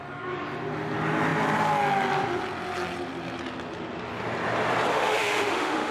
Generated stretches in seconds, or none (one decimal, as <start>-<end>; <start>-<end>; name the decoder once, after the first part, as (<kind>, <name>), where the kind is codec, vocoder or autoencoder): 4.9-5.9 (autoencoder, DAC-VAE)